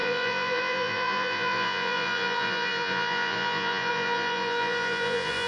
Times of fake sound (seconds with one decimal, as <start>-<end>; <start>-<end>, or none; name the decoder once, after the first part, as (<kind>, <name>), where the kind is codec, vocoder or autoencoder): 0.0-5.5 (vocoder, Vocos)